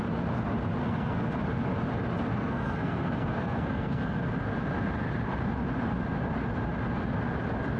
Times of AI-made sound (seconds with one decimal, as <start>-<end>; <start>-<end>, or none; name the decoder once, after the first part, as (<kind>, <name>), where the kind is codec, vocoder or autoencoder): 0.8-1.3 (codec, SNAC); 2.3-4.3